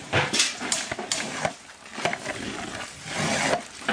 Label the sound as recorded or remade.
recorded